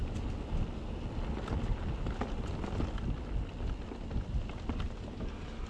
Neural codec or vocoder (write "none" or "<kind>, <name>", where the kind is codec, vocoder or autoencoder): none